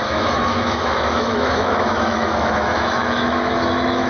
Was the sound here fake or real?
fake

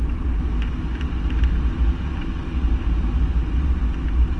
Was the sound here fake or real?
real